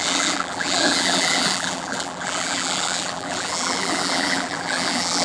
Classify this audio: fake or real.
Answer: fake